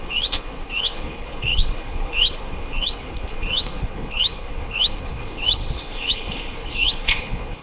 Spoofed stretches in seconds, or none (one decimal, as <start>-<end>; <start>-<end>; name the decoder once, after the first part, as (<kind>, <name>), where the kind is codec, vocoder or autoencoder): 0.0-7.6 (codec, HILCodec)